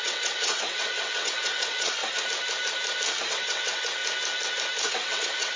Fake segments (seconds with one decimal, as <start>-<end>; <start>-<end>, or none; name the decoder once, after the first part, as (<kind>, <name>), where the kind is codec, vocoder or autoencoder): 0.0-2.0 (vocoder, WaveNeXt); 3.3-4.0; 4.9-5.6